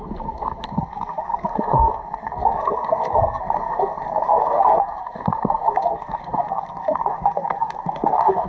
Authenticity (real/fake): fake